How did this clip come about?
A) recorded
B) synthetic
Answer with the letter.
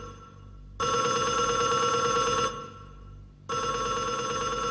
A